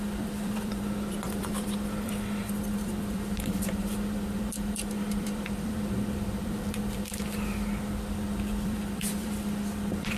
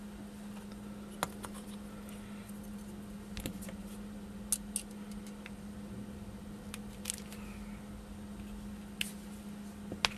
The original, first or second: second